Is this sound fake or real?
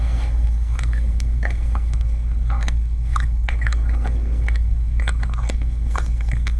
fake